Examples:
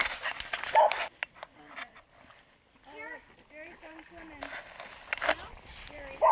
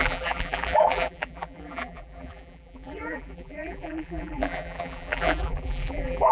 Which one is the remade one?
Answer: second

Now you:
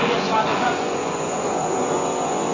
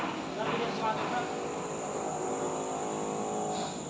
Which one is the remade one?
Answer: first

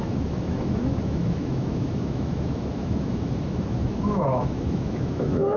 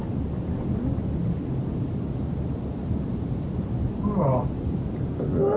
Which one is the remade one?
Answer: first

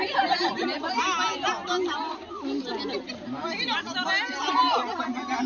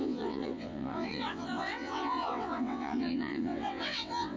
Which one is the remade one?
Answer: second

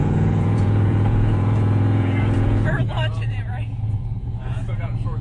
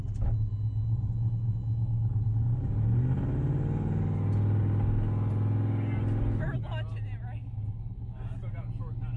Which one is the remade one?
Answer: first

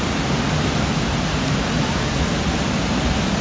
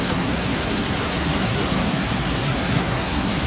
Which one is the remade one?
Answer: second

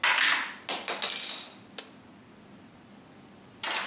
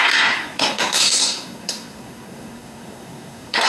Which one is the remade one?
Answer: second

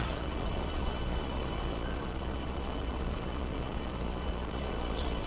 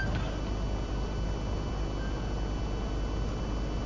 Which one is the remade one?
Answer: first